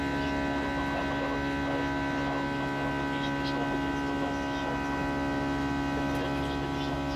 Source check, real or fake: real